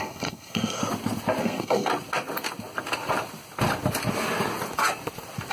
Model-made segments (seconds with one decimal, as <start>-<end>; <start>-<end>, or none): 0.0-0.8; 1.4-1.9